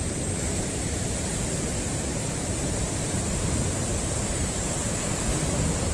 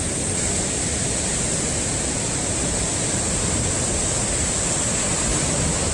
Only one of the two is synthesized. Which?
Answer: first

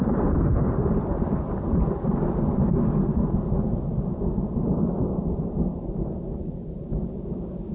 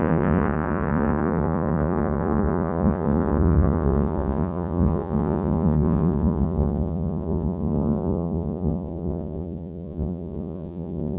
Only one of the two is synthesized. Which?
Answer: second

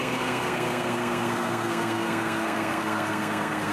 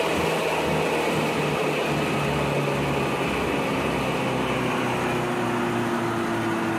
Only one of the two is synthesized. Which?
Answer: first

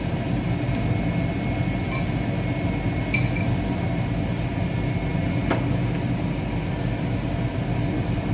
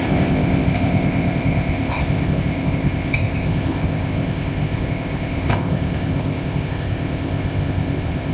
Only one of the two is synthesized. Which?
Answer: second